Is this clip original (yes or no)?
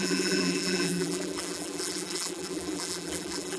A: no